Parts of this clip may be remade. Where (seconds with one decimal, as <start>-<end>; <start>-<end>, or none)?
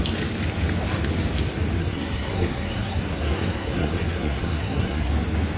1.8-5.1